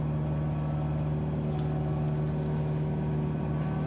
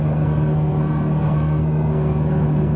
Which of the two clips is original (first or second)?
first